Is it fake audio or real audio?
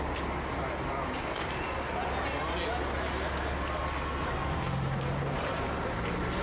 real